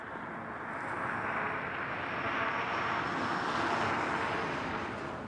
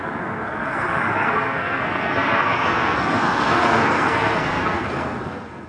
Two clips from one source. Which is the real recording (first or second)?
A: first